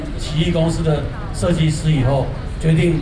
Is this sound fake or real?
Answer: real